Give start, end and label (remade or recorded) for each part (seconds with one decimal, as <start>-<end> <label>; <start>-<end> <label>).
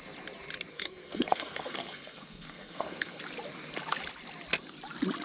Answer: 0.0-0.7 recorded; 0.7-3.2 remade; 3.2-5.2 recorded